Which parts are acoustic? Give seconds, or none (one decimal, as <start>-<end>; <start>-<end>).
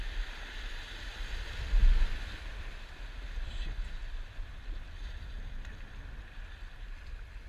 0.0-7.5